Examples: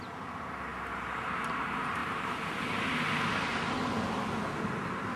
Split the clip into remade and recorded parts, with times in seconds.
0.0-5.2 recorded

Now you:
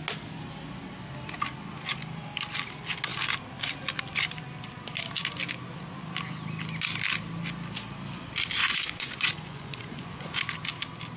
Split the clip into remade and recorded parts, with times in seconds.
0.0-8.6 recorded; 8.6-10.4 remade; 10.4-11.2 recorded

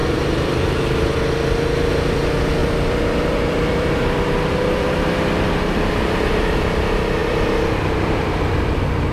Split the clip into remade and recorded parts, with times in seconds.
0.0-1.2 remade; 1.2-2.6 recorded; 2.6-6.3 remade; 6.3-7.2 recorded; 7.2-9.1 remade

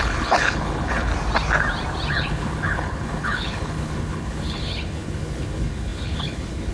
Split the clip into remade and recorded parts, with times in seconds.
0.0-1.1 remade; 1.1-2.1 recorded; 2.1-6.7 remade

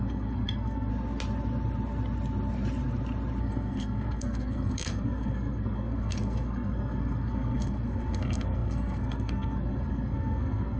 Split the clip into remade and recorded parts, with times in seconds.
0.0-0.9 remade; 0.9-3.4 recorded; 3.4-10.8 remade

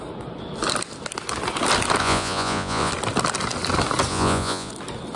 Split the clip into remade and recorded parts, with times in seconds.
0.0-2.0 recorded; 2.0-2.9 remade; 2.9-4.1 recorded; 4.1-4.7 remade; 4.7-5.2 recorded

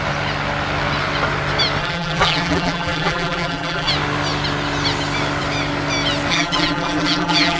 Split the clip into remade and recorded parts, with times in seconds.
0.0-1.8 recorded; 1.8-3.9 remade; 3.9-6.3 recorded; 6.3-7.6 remade